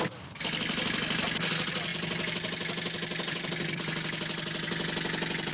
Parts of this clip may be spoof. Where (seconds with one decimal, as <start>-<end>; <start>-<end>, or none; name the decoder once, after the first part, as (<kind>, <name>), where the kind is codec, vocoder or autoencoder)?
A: none